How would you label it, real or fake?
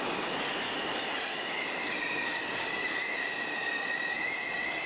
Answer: real